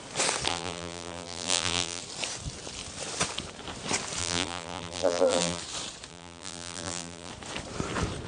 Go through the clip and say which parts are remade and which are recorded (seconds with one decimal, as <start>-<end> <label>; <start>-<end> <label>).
0.0-0.5 recorded; 0.5-2.0 remade; 2.0-4.2 recorded; 4.2-5.6 remade; 5.6-6.1 recorded; 6.1-7.3 remade; 7.3-8.3 recorded